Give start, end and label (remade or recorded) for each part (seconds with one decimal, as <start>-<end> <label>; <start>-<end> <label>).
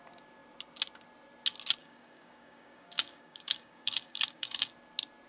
0.0-1.8 recorded; 1.8-4.7 remade; 4.7-5.3 recorded